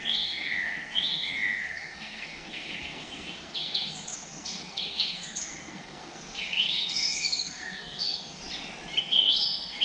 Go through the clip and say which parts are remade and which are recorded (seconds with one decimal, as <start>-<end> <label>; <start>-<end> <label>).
0.0-8.4 remade; 8.4-9.0 recorded; 9.0-9.8 remade